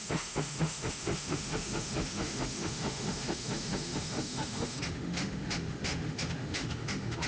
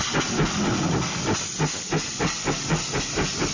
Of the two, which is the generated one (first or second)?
first